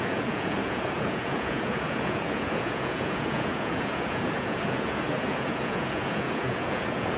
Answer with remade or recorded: remade